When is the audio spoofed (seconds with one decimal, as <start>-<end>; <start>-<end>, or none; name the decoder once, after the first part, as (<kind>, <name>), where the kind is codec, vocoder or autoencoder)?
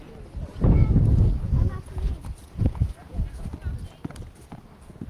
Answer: 0.5-3.5 (vocoder, Vocos)